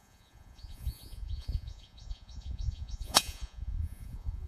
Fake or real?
fake